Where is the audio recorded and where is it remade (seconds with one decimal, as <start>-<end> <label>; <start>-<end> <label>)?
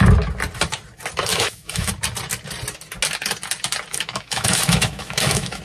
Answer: 0.0-1.3 recorded; 1.3-1.9 remade; 1.9-3.9 recorded; 3.9-5.6 remade